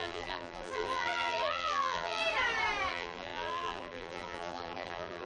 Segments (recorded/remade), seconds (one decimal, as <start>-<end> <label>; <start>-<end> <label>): 0.0-2.2 remade; 2.2-2.9 recorded; 2.9-5.3 remade